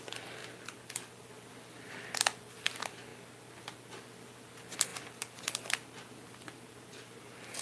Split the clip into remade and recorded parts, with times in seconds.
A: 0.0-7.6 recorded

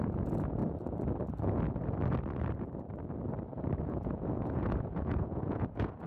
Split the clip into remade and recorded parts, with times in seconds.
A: 0.0-0.6 remade; 0.6-3.8 recorded; 3.8-6.1 remade